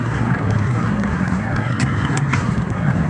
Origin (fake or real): fake